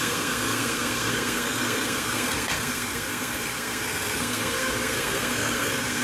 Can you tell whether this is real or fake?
fake